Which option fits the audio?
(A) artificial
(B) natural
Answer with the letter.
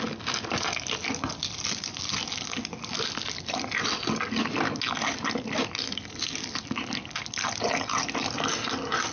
B